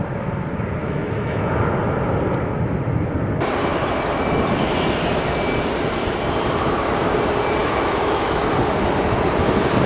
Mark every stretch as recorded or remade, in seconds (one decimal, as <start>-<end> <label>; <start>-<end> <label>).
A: 0.0-0.8 recorded; 0.8-1.5 remade; 1.5-7.6 recorded; 7.6-8.4 remade; 8.4-9.9 recorded